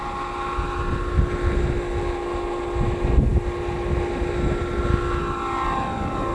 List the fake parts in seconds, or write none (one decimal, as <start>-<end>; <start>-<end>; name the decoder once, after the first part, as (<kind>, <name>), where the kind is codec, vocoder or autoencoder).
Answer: none